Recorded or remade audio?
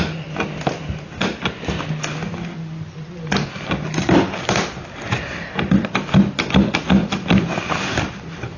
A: recorded